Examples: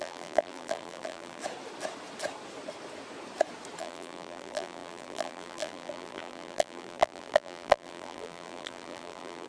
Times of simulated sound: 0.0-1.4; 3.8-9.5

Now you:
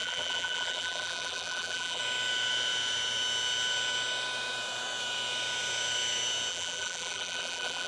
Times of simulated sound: 0.0-2.0; 6.5-7.9

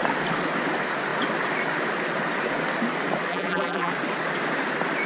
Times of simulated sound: 3.3-3.9

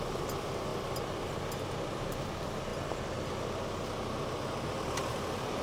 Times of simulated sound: 0.0-2.7; 5.1-5.6

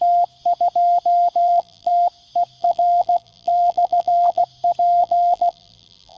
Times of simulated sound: 1.4-1.9; 2.6-4.4; 5.0-6.2

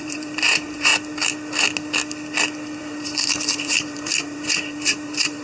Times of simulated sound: 0.0-0.9; 2.8-5.4

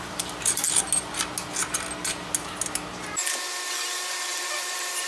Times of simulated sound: 0.0-0.6; 3.7-5.1

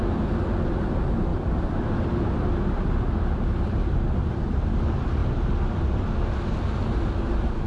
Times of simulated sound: 1.3-4.7; 5.2-6.6